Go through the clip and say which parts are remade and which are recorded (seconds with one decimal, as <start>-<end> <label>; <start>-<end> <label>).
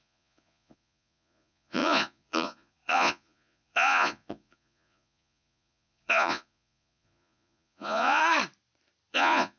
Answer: 0.0-8.2 remade; 8.2-9.1 recorded; 9.1-9.6 remade